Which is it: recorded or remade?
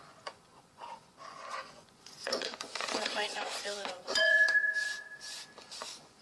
remade